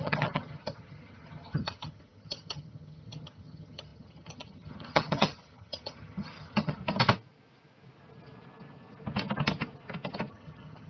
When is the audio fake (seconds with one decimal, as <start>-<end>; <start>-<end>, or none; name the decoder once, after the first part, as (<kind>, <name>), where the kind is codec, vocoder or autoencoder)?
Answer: 0.0-6.8 (vocoder, HiFi-GAN); 10.3-10.9